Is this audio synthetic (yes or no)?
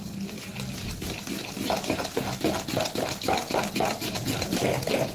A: no